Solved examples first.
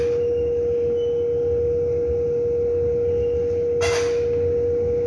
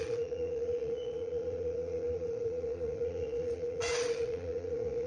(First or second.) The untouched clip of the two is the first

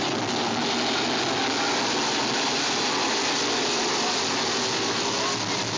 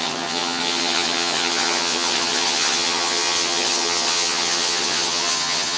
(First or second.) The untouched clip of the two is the first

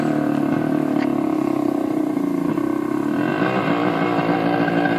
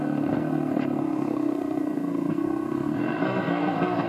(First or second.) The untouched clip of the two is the first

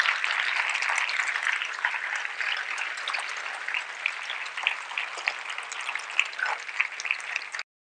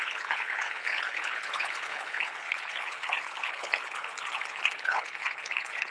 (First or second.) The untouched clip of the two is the first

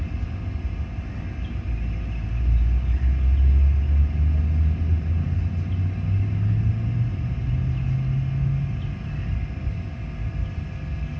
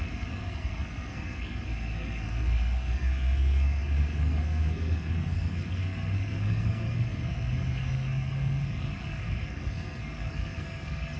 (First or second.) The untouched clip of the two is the first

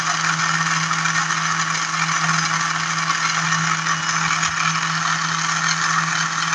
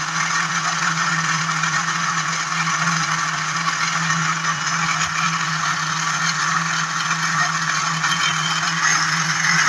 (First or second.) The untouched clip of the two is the first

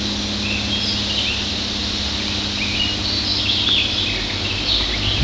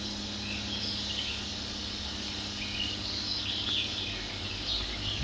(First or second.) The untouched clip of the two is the first